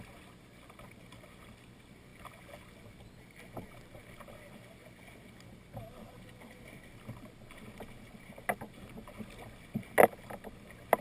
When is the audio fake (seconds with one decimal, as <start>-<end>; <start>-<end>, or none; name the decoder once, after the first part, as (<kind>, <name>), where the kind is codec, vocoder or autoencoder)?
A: none